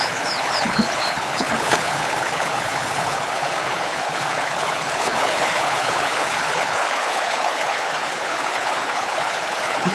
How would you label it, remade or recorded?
remade